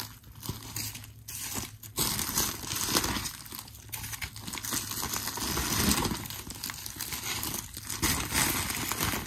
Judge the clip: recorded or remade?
recorded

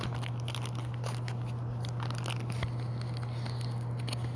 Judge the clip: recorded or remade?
recorded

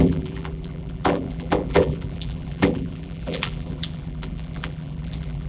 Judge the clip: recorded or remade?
remade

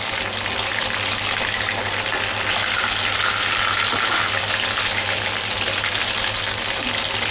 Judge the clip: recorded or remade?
recorded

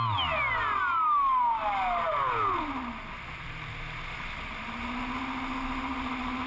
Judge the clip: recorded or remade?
recorded